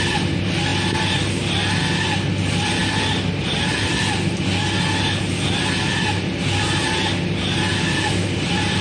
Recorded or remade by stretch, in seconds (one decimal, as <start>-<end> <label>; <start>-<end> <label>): 0.0-8.8 recorded